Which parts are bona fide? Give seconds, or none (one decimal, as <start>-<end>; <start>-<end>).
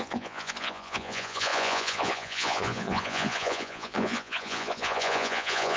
none